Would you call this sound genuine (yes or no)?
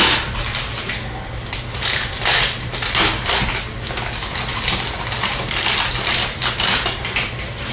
yes